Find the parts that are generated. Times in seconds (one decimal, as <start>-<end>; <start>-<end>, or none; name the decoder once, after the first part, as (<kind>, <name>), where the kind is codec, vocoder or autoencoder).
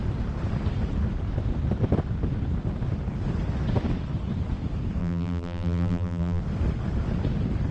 5.0-6.4 (vocoder, BigVGAN v2)